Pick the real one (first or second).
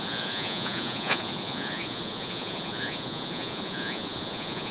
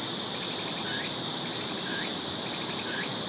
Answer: second